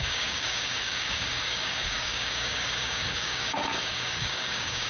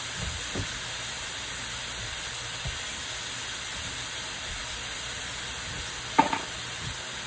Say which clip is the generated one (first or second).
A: first